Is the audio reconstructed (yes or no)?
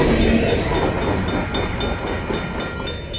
no